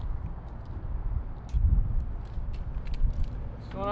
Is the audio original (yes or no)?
yes